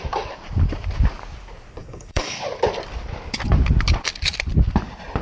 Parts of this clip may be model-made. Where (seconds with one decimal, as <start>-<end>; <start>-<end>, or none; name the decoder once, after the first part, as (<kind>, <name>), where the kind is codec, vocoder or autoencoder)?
1.8-2.4 (codec, DAC)